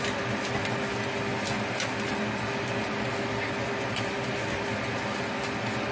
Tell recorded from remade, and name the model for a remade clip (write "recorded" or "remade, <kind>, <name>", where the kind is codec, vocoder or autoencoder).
recorded